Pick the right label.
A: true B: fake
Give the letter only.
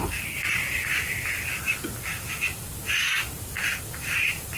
A